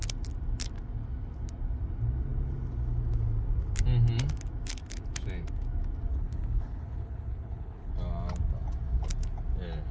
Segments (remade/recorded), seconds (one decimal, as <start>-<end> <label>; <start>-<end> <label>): 0.0-6.1 recorded; 6.1-7.9 remade; 7.9-9.9 recorded